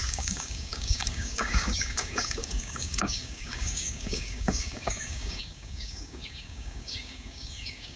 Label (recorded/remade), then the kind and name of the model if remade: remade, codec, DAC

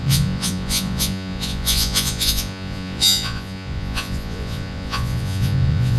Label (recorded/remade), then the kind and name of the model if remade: remade, vocoder, Vocos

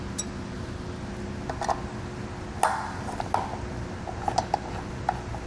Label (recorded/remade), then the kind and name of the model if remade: recorded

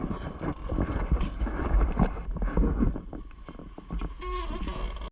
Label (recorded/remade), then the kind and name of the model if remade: recorded